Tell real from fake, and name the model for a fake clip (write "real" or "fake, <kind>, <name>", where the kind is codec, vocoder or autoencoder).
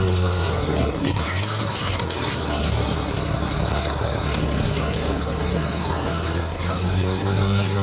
fake, codec, SNAC